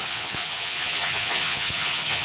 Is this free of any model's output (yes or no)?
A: no